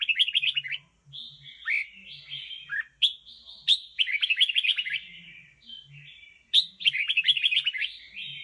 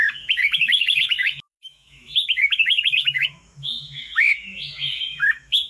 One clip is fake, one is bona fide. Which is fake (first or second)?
second